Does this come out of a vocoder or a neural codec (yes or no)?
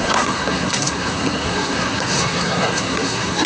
yes